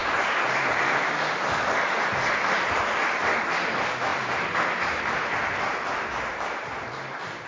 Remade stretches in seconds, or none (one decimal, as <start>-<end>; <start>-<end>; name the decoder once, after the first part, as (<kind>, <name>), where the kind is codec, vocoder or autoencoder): none